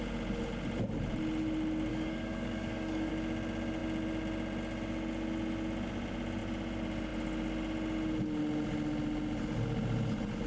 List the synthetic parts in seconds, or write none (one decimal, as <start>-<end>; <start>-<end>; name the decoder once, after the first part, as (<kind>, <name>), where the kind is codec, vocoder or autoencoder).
1.9-3.1 (codec, DAC)